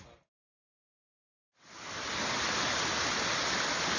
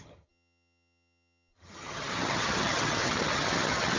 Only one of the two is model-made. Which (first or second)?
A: second